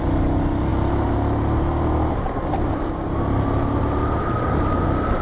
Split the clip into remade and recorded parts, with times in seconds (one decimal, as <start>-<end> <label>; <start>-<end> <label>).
0.0-5.2 recorded